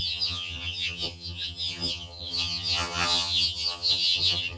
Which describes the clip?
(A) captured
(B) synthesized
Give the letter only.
B